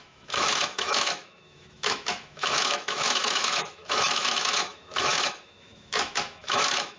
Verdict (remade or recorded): remade